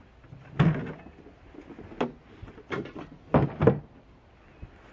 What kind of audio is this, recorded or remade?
recorded